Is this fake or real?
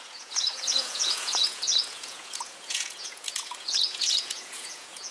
fake